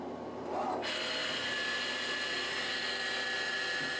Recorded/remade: recorded